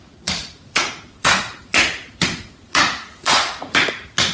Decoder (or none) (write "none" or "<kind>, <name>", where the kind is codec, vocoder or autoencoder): vocoder, Vocos